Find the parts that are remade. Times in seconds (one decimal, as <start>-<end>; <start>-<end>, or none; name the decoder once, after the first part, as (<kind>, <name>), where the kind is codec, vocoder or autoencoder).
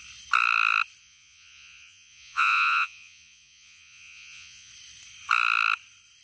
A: 1.0-4.7 (vocoder, Vocos)